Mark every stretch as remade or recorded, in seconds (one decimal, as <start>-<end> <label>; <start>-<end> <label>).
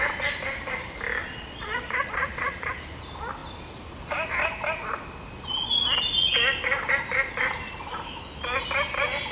0.0-1.2 recorded; 1.2-2.7 remade; 2.7-9.3 recorded